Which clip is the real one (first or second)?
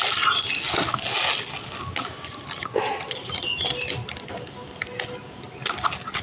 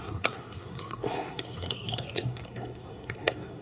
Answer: first